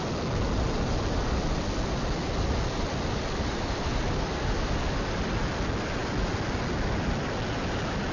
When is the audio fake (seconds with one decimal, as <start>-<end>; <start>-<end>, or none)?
none